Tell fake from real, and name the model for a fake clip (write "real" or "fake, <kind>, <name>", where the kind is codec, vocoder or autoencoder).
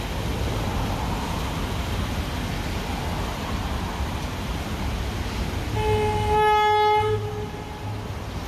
real